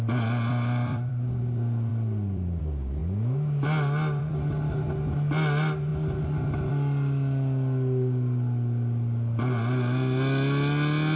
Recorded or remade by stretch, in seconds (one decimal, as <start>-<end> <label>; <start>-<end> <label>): 0.0-0.5 recorded; 0.5-1.1 remade; 1.1-1.9 recorded; 1.9-2.6 remade; 2.6-11.2 recorded